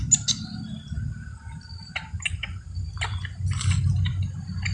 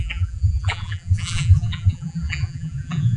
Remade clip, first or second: second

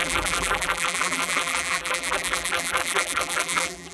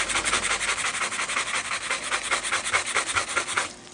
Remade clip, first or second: first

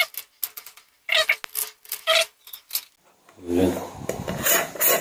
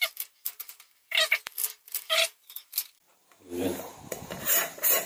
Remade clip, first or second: second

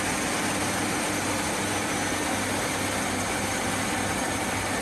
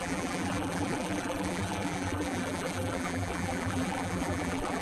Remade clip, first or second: second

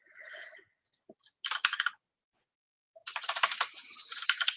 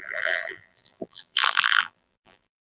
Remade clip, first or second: second